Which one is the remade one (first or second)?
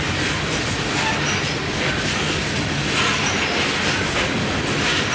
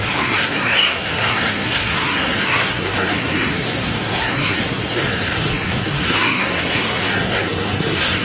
second